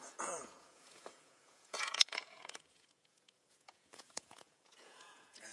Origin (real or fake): fake